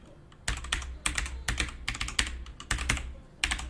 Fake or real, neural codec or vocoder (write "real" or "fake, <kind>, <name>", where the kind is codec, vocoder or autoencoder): real